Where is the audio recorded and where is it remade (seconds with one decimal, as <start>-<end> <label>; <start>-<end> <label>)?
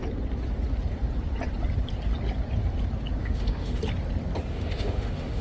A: 0.0-3.2 recorded; 3.2-3.8 remade; 3.8-4.5 recorded; 4.5-5.4 remade